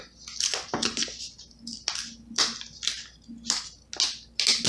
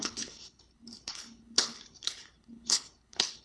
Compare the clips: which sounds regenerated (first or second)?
second